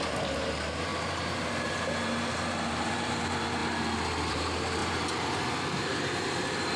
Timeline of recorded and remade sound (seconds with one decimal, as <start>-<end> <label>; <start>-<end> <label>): 0.0-3.6 remade; 3.6-4.3 recorded; 4.3-6.8 remade

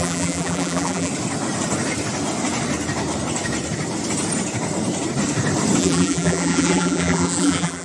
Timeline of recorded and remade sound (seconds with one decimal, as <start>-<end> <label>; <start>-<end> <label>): 0.0-1.1 remade; 1.1-5.8 recorded; 5.8-7.8 remade